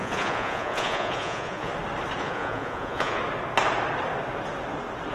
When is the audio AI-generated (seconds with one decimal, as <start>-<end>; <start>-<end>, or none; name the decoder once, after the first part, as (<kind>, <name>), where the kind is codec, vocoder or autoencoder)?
0.0-1.7 (vocoder, Vocos); 2.2-3.2